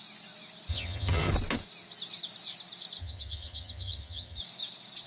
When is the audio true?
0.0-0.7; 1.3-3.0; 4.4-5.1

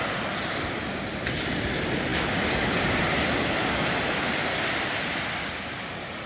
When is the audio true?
0.0-6.3

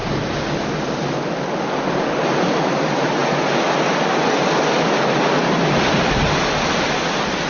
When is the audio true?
0.0-7.5